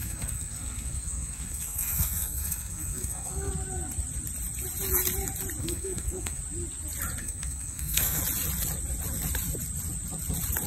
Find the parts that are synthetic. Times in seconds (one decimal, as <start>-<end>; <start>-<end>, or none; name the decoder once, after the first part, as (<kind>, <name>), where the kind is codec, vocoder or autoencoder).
0.0-3.5 (codec, SNAC); 5.6-6.4; 7.2-8.2